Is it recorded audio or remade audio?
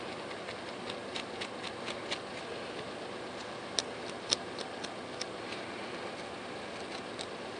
recorded